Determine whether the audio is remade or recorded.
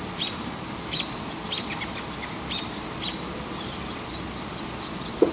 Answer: recorded